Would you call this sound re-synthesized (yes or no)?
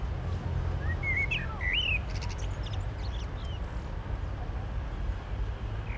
no